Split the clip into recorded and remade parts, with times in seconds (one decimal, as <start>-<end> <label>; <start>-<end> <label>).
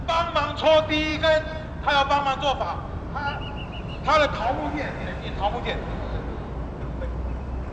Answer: 0.0-7.7 recorded